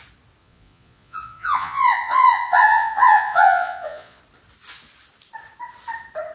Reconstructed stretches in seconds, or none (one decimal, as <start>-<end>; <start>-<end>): 0.4-4.2